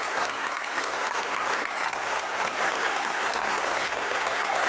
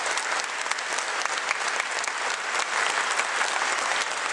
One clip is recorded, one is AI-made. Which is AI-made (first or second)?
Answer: first